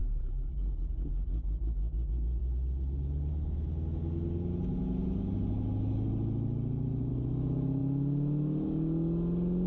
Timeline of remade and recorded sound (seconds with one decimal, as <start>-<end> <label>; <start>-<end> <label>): 0.0-0.5 remade; 0.5-9.7 recorded